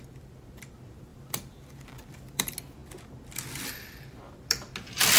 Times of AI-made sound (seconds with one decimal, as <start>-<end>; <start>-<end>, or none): 1.1-2.4